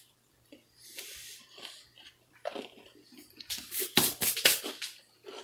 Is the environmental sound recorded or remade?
remade